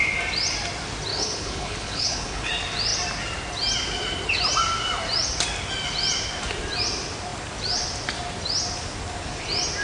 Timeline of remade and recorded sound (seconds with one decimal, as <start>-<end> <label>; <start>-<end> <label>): 0.0-1.1 recorded; 1.1-2.5 remade; 2.5-9.8 recorded

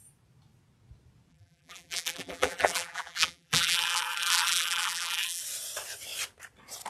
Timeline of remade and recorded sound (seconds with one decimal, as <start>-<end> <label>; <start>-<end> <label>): 0.0-1.3 recorded; 1.3-5.4 remade; 5.4-6.9 recorded